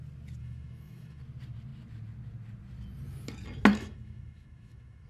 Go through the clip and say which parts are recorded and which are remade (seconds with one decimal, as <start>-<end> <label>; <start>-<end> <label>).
0.0-0.4 recorded; 0.4-1.2 remade; 1.2-3.7 recorded; 3.7-5.1 remade

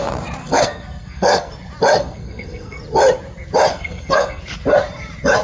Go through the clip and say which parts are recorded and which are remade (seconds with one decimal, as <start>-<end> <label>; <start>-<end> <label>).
0.0-0.4 recorded; 0.4-1.5 remade; 1.5-2.0 recorded; 2.0-2.8 remade; 2.8-3.7 recorded; 3.7-4.4 remade; 4.4-5.4 recorded

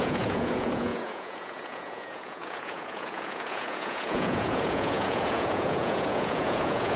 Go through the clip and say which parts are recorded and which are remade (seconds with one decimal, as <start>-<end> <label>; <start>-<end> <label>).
0.0-7.0 remade

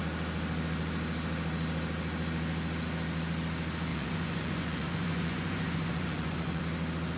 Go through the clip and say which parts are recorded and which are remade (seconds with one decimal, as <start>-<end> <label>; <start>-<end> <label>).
0.0-3.9 recorded; 3.9-6.6 remade; 6.6-7.2 recorded

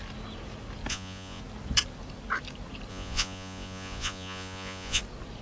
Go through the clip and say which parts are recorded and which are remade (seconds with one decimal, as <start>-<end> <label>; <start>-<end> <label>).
0.0-0.9 recorded; 0.9-1.4 remade; 1.4-2.9 recorded; 2.9-5.0 remade; 5.0-5.4 recorded

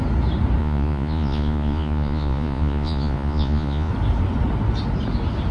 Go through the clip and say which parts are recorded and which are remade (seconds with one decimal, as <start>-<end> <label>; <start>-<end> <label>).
0.0-0.6 recorded; 0.6-3.9 remade; 3.9-5.5 recorded